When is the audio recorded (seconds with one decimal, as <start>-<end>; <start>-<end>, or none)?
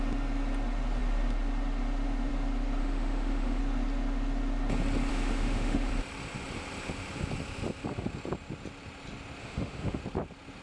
0.0-2.8; 3.6-5.1; 5.9-9.4; 10.0-10.6